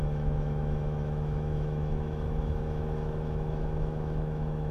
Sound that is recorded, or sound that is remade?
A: remade